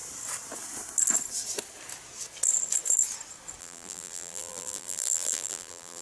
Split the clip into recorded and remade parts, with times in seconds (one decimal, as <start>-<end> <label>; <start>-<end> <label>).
0.0-3.6 recorded; 3.6-6.0 remade